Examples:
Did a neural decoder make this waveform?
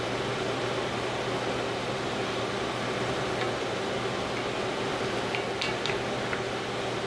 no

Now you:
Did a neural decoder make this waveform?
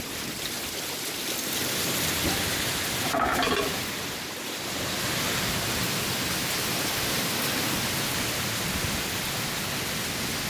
no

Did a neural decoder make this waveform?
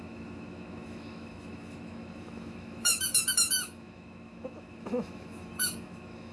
yes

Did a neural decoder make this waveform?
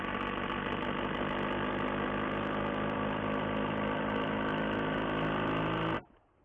no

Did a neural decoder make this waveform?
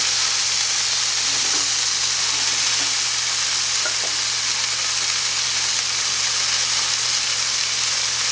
no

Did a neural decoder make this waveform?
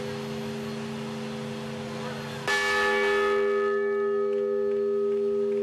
no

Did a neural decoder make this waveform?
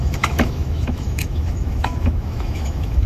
yes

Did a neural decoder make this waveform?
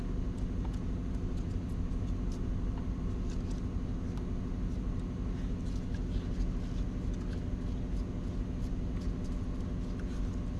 no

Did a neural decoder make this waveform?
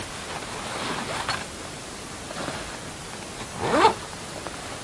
no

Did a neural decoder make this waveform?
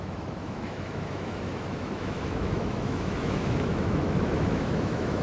yes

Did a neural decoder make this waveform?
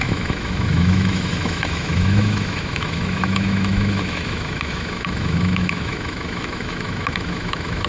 yes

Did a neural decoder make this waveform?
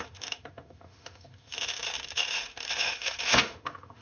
yes